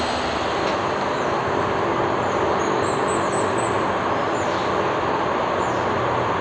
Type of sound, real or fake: real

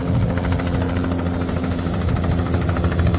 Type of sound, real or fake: real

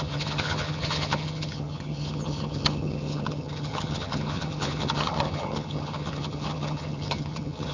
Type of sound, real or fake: fake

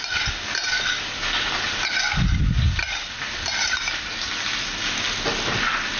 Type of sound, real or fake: real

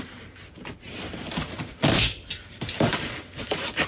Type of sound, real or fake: real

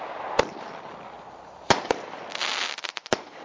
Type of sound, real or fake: real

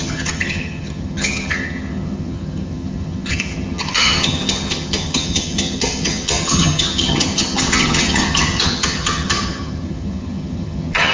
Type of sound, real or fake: fake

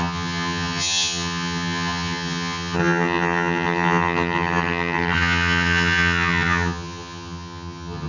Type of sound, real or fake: fake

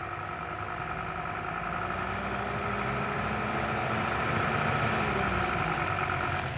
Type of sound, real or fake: real